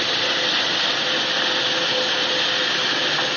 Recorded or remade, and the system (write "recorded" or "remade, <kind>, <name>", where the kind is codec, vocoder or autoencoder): recorded